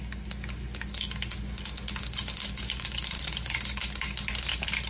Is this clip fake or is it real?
real